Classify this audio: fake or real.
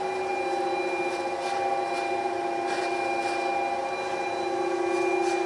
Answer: real